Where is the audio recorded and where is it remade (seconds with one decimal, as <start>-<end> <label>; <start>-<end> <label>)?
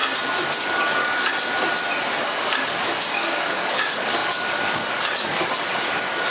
0.0-0.6 recorded; 0.6-1.3 remade; 1.3-2.0 recorded; 2.0-6.3 remade